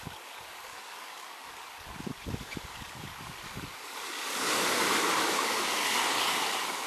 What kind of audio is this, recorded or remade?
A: remade